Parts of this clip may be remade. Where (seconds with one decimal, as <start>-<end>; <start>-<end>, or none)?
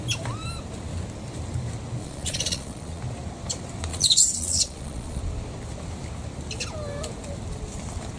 2.0-3.0; 3.9-5.2